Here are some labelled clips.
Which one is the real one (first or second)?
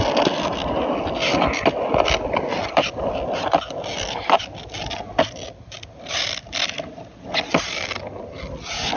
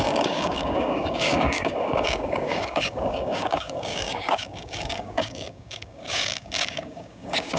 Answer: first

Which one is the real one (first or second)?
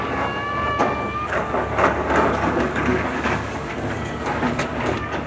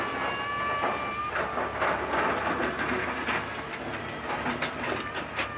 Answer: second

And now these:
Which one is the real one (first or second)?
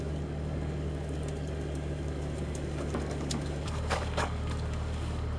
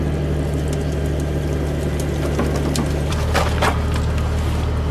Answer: second